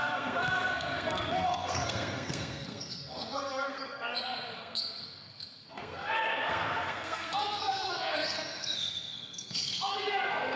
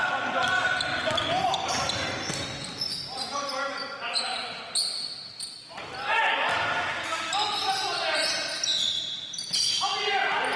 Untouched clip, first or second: second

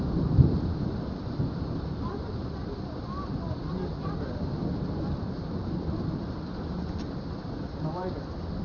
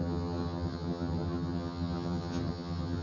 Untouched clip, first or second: first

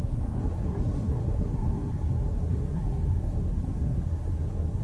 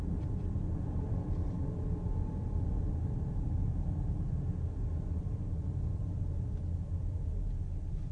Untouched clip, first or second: second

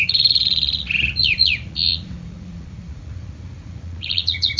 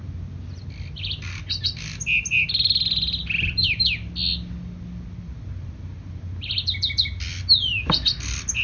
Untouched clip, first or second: second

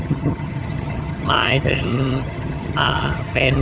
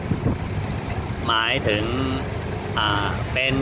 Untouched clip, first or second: second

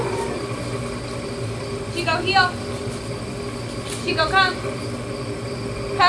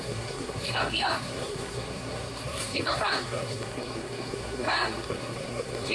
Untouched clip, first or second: first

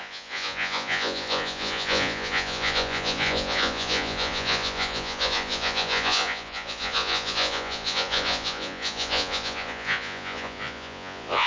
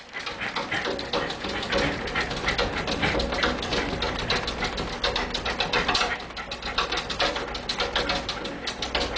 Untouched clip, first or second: second